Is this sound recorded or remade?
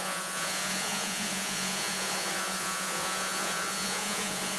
remade